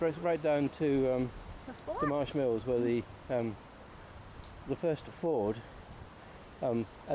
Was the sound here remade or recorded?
recorded